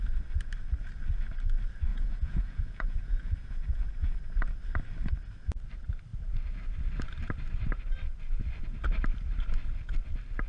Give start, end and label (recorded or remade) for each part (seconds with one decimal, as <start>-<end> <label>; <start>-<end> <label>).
0.0-1.9 recorded; 1.9-3.9 remade; 3.9-10.5 recorded